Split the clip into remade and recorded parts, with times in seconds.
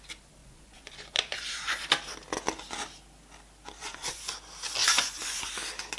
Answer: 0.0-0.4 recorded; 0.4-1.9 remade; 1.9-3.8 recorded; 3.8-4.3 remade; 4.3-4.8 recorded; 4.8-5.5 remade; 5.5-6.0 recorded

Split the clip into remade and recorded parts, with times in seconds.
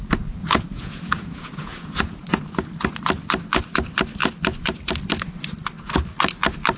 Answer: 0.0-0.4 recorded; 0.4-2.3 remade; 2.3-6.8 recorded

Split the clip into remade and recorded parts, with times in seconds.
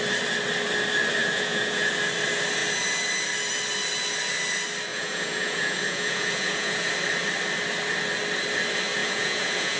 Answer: 0.0-1.2 recorded; 1.2-1.9 remade; 1.9-4.9 recorded; 4.9-6.9 remade; 6.9-9.0 recorded; 9.0-9.8 remade